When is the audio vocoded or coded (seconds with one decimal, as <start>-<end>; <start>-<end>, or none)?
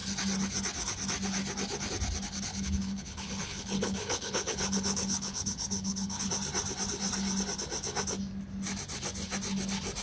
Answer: 2.5-6.3